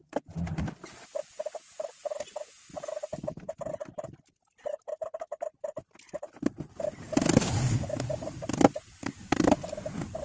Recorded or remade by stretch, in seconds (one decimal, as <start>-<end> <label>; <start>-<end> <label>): 0.0-10.2 recorded